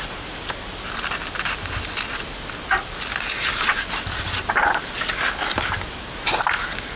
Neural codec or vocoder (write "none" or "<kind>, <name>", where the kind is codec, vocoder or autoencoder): none